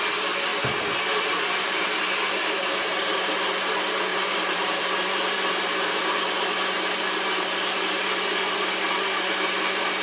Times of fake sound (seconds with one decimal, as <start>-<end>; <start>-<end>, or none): 2.2-3.3; 4.1-6.1